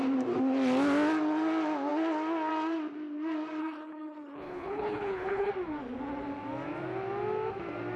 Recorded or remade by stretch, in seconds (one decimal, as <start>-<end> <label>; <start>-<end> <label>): 0.0-3.6 recorded; 3.6-5.5 remade; 5.5-8.0 recorded